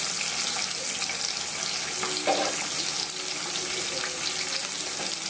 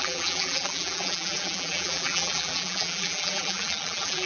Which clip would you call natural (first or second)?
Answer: first